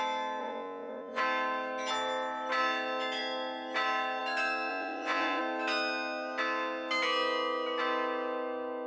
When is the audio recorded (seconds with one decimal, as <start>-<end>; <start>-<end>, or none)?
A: 0.0-0.4; 1.2-4.7; 5.4-8.9